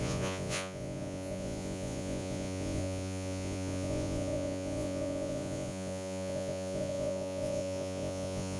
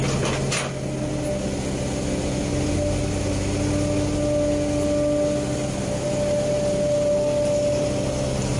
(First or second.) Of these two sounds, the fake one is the first